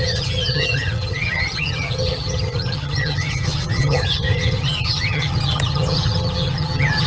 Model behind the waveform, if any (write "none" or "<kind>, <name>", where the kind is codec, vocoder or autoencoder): vocoder, HiFi-GAN